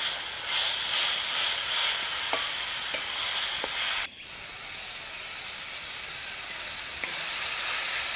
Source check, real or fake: real